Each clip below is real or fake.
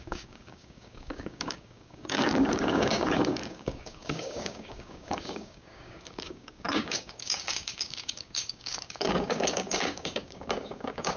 fake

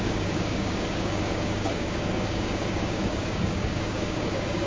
fake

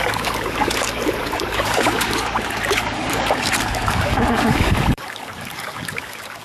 fake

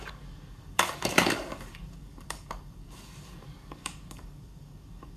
fake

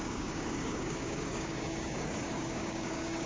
fake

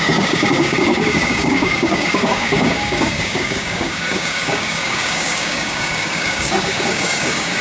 fake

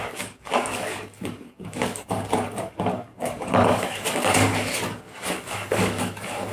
fake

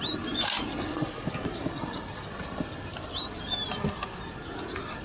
real